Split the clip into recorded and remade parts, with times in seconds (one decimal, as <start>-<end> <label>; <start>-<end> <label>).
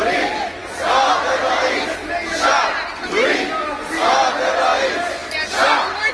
0.0-6.1 recorded